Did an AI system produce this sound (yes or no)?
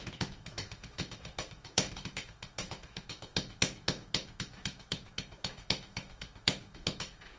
yes